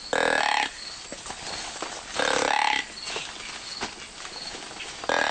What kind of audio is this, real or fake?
real